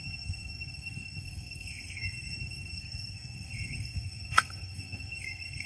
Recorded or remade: remade